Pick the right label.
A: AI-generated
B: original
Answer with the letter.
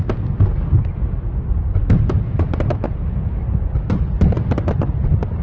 B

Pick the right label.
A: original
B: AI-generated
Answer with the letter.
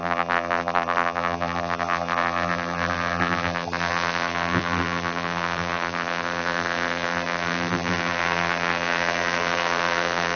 B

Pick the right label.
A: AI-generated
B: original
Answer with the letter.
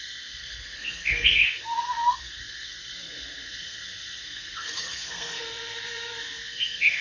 A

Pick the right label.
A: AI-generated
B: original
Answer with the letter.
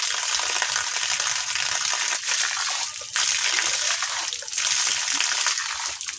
B